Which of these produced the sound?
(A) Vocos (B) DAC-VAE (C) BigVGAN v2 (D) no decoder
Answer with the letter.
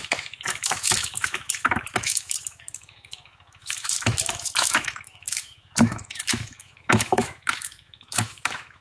B